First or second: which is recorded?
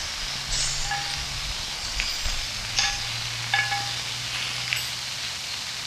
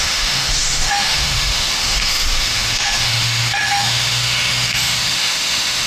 first